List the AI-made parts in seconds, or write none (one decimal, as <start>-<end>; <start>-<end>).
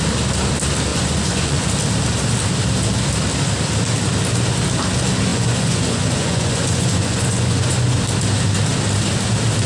0.9-1.7; 5.3-8.0